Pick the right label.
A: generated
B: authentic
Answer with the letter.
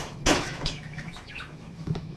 A